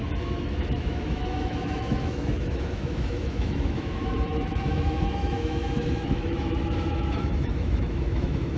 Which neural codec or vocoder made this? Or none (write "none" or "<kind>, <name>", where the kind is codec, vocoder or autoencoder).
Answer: autoencoder, DAC-VAE